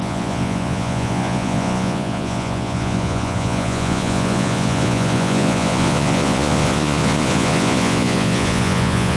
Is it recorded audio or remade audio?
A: remade